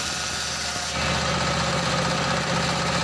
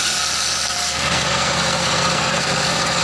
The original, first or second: first